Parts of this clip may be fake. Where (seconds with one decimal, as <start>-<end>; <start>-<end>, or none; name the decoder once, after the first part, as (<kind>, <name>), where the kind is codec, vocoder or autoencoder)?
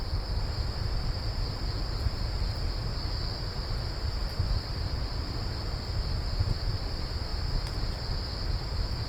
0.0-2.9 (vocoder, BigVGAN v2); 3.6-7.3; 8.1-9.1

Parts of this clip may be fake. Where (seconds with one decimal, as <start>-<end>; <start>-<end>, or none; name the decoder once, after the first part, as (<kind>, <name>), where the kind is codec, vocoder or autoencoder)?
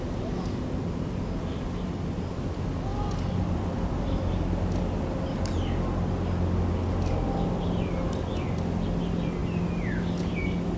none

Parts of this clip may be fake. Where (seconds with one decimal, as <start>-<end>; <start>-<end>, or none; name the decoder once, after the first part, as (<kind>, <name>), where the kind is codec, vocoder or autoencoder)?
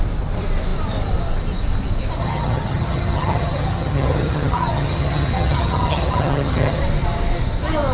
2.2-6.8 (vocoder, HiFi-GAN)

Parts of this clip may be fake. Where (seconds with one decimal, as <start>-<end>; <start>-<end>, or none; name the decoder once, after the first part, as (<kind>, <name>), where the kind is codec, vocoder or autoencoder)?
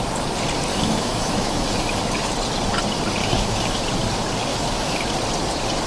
0.7-2.0 (autoencoder, DAC-VAE); 3.2-3.8; 4.5-5.1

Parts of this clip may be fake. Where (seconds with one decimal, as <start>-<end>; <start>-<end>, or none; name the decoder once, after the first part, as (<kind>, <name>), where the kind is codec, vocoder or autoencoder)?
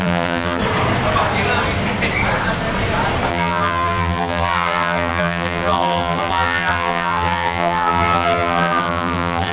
0.0-0.6 (vocoder, BigVGAN v2); 3.3-9.5